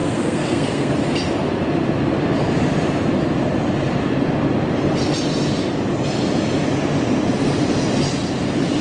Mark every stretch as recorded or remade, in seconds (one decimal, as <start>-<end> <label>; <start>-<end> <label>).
0.0-0.9 remade; 0.9-8.8 recorded